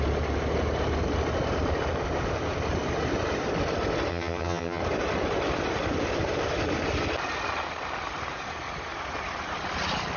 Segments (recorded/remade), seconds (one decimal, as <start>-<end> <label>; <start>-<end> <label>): 0.0-4.1 recorded; 4.1-4.8 remade; 4.8-10.2 recorded